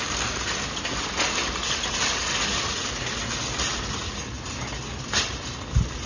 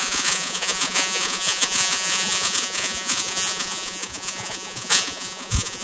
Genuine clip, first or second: first